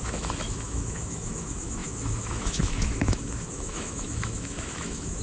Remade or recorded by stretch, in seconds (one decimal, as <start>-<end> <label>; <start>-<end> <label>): 0.0-5.2 remade

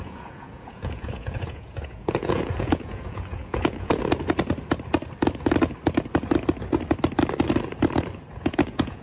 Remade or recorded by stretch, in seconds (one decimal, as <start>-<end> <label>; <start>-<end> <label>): 0.0-4.0 remade; 4.0-8.4 recorded; 8.4-9.0 remade

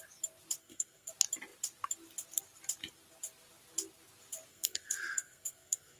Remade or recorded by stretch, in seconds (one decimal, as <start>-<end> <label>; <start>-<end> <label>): 0.0-0.6 recorded; 0.6-1.1 remade; 1.1-4.5 recorded; 4.5-6.0 remade

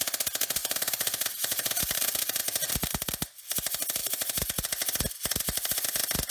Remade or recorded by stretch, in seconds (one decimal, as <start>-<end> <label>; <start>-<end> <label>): 0.0-0.6 recorded; 0.6-2.7 remade; 2.7-4.0 recorded; 4.0-4.7 remade; 4.7-6.3 recorded

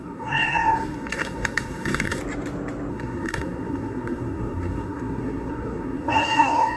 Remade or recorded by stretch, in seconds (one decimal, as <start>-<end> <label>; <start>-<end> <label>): 0.0-2.2 remade; 2.2-2.9 recorded; 2.9-6.8 remade

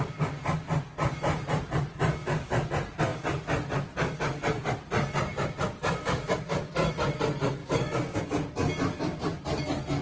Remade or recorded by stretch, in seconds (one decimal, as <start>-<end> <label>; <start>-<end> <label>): 0.0-7.6 recorded; 7.6-8.2 remade; 8.2-10.0 recorded

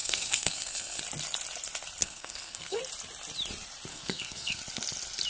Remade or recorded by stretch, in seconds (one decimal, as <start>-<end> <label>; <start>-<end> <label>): 0.0-1.0 remade; 1.0-2.0 recorded; 2.0-2.8 remade; 2.8-3.9 recorded; 3.9-4.6 remade; 4.6-5.3 recorded